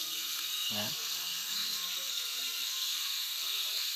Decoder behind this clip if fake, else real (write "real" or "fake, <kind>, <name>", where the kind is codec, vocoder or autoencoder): fake, codec, SNAC